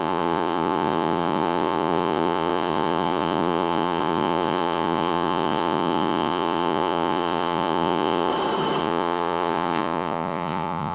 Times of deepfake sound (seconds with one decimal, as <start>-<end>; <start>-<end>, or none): 0.0-8.3; 8.8-10.9